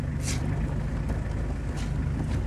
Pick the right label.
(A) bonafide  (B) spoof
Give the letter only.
A